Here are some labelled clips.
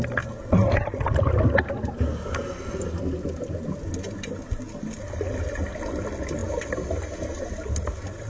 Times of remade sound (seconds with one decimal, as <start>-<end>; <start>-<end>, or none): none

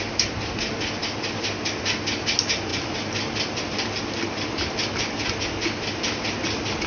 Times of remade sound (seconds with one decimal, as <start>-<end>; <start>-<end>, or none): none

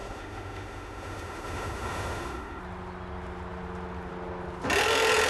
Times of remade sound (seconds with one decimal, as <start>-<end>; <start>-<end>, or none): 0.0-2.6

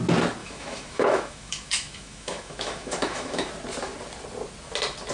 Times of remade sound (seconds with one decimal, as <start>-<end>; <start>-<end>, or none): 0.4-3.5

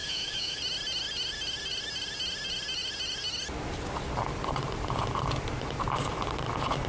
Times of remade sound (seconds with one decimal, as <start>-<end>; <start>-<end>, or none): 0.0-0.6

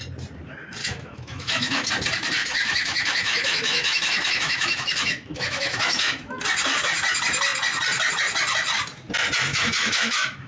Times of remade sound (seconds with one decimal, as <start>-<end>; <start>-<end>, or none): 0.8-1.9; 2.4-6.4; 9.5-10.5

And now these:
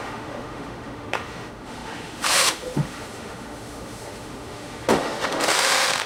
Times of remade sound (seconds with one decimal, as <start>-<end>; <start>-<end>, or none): 0.0-6.1

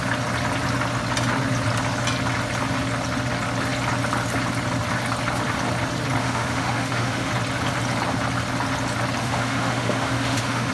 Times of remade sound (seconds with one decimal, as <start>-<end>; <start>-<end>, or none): 6.2-7.3; 9.2-10.7